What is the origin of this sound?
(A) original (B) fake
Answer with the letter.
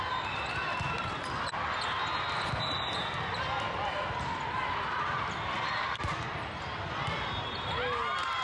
A